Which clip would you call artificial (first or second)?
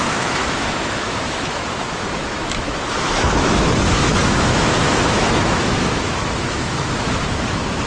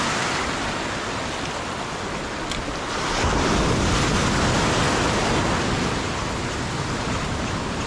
first